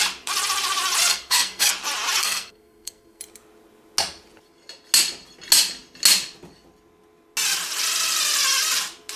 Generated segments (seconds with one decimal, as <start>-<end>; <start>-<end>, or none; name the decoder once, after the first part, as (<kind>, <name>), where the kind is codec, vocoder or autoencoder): 1.1-1.7 (codec, SNAC); 2.2-3.2